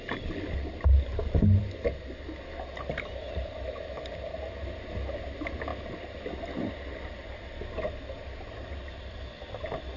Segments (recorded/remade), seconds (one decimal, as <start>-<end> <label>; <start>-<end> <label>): 0.0-10.0 recorded